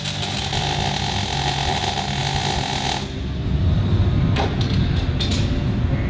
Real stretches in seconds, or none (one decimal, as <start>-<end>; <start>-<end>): 0.0-6.1